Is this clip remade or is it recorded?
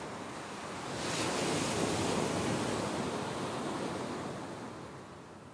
recorded